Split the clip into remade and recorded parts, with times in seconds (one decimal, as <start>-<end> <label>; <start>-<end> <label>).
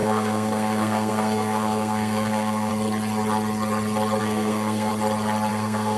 0.0-2.7 remade; 2.7-4.2 recorded; 4.2-4.9 remade; 4.9-5.5 recorded; 5.5-6.0 remade